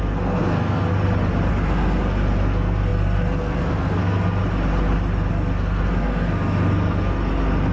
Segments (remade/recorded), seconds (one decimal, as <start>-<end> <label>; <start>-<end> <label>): 0.0-0.9 remade; 0.9-1.5 recorded; 1.5-4.4 remade; 4.4-5.3 recorded; 5.3-7.7 remade